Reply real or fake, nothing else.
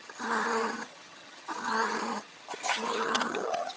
fake